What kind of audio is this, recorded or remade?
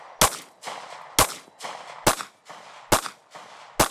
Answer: recorded